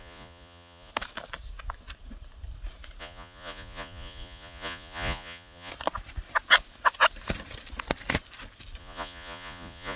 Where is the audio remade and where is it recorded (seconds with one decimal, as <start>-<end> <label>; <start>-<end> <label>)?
0.0-0.9 remade; 0.9-3.0 recorded; 3.0-5.7 remade; 5.7-8.8 recorded; 8.8-10.0 remade